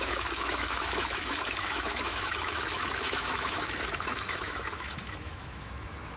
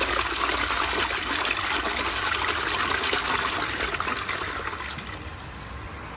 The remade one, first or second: first